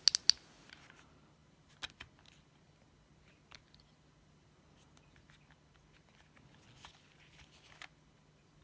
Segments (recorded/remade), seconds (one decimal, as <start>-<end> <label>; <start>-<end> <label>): 0.0-8.6 recorded